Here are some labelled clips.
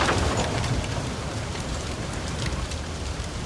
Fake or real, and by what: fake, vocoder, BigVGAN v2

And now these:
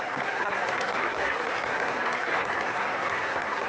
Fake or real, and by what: fake, codec, SNAC